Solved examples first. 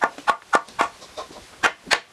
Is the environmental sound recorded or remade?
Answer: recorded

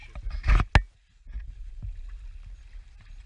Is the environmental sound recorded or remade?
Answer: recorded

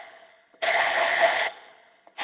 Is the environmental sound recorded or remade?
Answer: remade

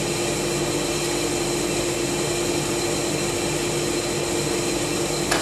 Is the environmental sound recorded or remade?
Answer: recorded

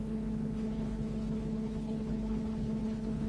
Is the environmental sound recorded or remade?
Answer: remade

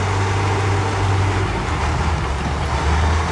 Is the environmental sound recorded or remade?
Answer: recorded